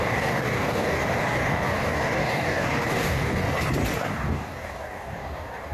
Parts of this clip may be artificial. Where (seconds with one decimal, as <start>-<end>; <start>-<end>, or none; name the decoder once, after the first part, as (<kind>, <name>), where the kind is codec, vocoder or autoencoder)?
0.0-3.4 (codec, DAC); 4.0-5.7